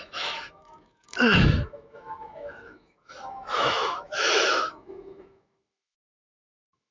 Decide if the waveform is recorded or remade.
remade